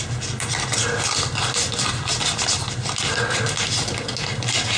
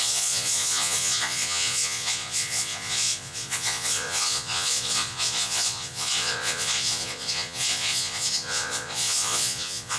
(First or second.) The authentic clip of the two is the first